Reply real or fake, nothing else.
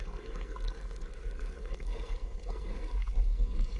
fake